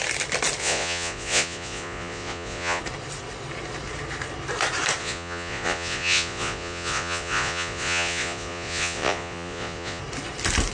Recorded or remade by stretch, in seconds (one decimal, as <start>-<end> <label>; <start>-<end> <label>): 0.0-0.6 recorded; 0.6-2.8 remade; 2.8-5.0 recorded; 5.0-10.0 remade; 10.0-10.7 recorded

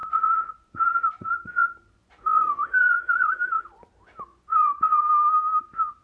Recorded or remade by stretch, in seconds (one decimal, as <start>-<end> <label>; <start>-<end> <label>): 0.0-3.6 remade; 3.6-4.3 recorded; 4.3-5.0 remade; 5.0-6.0 recorded

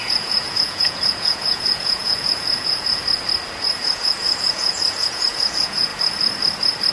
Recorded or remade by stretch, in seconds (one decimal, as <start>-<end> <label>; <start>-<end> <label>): 0.0-3.0 remade; 3.0-3.6 recorded; 3.6-5.9 remade; 5.9-6.9 recorded

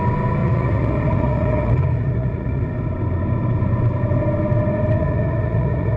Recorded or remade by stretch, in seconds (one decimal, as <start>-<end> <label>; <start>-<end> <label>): 0.0-0.4 recorded; 0.4-2.6 remade; 2.6-5.0 recorded; 5.0-6.0 remade